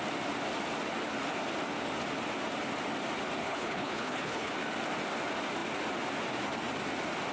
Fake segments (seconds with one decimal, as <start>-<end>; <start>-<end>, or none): 3.4-4.5